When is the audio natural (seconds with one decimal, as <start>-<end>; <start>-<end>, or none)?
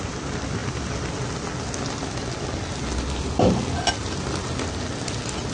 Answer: 0.0-5.5